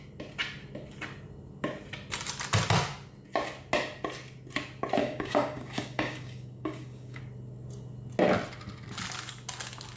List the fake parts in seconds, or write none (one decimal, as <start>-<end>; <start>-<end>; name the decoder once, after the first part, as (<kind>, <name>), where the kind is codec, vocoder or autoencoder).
5.0-7.2 (codec, DAC)

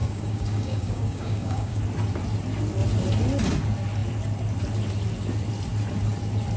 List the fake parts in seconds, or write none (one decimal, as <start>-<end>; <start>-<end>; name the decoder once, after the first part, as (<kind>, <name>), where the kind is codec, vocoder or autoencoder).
0.0-1.8 (codec, DAC)